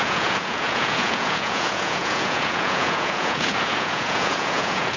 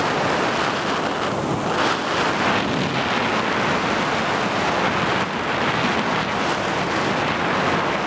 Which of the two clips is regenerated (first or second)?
first